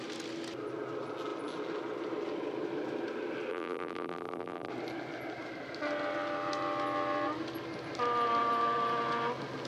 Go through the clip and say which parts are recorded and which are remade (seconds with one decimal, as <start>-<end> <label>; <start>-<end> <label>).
0.0-3.5 recorded; 3.5-4.7 remade; 4.7-9.7 recorded